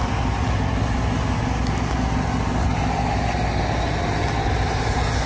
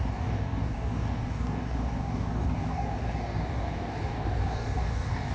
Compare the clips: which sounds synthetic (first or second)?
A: second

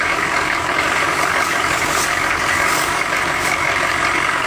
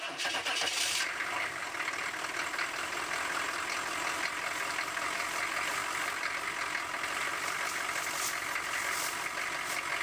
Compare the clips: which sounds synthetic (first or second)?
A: first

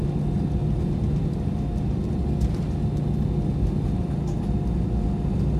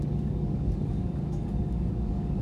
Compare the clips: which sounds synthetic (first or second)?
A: second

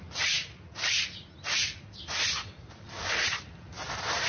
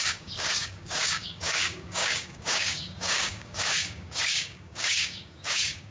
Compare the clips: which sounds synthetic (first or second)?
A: second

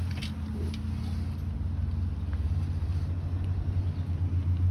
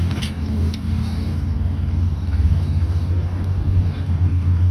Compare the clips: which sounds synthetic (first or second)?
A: second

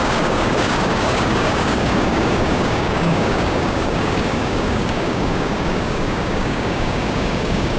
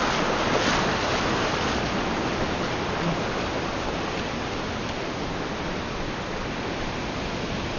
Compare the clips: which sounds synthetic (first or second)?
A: first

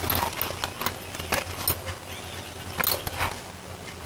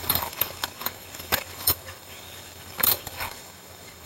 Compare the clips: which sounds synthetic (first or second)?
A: second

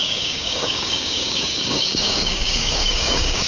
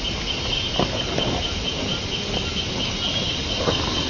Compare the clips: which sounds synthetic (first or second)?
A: first